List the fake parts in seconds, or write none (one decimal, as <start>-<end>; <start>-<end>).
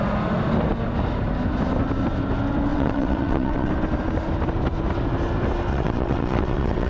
2.7-3.7; 5.7-6.9